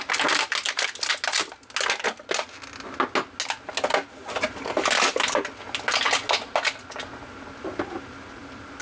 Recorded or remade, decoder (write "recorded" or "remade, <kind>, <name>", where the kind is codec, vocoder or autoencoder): recorded